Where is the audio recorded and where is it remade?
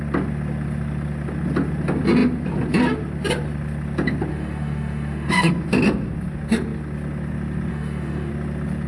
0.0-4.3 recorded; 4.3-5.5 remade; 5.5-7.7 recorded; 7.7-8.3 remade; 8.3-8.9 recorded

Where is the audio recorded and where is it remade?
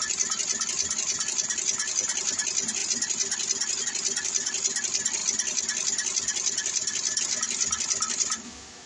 0.0-8.9 recorded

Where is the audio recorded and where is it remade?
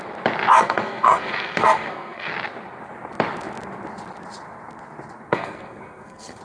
0.0-0.5 recorded; 0.5-2.3 remade; 2.3-5.3 recorded; 5.3-6.4 remade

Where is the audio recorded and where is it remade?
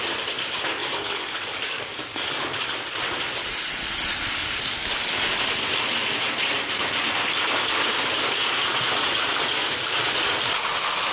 0.0-0.8 recorded; 0.8-2.7 remade; 2.7-4.1 recorded; 4.1-5.4 remade; 5.4-11.1 recorded